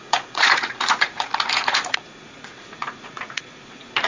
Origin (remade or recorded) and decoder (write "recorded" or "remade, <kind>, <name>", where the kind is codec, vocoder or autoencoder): remade, vocoder, Vocos